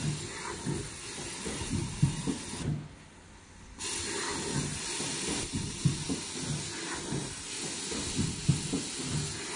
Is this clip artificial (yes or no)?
no